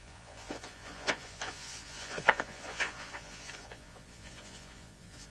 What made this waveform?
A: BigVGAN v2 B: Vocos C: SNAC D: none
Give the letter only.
B